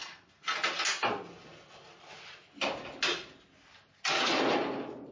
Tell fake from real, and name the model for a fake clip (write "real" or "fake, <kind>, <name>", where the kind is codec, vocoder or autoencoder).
real